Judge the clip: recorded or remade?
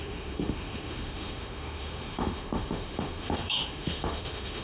remade